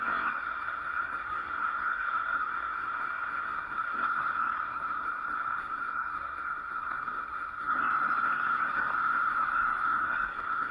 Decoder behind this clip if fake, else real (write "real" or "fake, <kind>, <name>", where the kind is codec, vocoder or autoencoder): fake, codec, SNAC